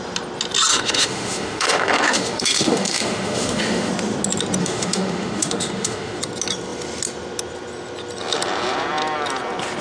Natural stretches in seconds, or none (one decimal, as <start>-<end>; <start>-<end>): 0.0-0.7; 3.9-4.6; 6.2-9.8